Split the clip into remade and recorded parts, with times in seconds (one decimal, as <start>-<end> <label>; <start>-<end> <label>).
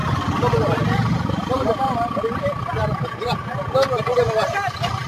0.0-5.1 recorded